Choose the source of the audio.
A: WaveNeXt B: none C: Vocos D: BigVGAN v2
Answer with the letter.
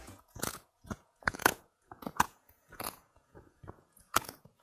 C